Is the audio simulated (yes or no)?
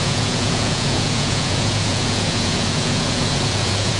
yes